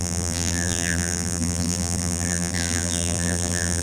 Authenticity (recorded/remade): remade